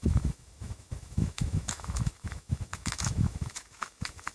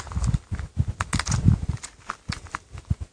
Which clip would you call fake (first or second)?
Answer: first